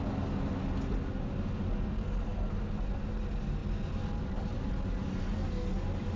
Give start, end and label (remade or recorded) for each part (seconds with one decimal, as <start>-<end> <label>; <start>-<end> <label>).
0.0-6.2 recorded

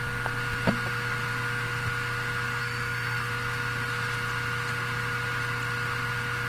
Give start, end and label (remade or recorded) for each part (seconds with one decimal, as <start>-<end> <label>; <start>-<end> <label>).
0.0-2.6 recorded; 2.6-3.3 remade; 3.3-6.5 recorded